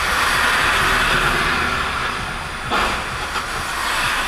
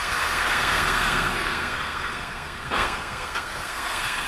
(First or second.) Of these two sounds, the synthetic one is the second